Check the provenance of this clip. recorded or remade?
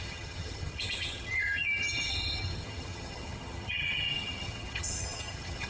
remade